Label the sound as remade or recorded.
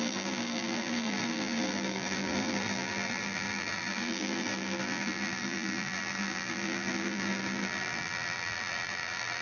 remade